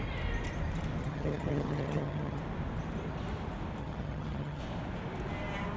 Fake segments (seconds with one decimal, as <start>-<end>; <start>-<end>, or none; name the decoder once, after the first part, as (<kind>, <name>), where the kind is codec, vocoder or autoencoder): 1.0-2.4 (vocoder, HiFi-GAN); 3.8-4.6